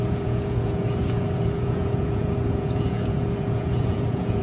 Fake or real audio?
fake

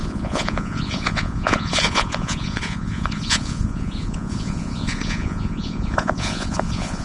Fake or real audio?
fake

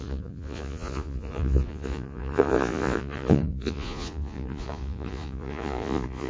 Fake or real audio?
fake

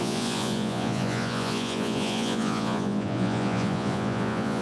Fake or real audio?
fake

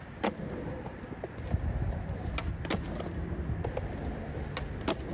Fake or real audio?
real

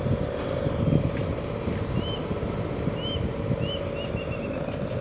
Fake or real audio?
real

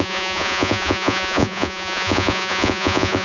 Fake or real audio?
fake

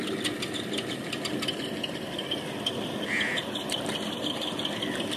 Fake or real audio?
real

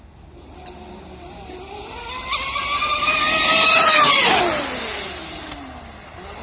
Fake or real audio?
real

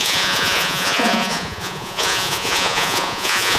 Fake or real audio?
fake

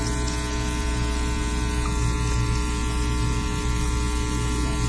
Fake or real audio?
real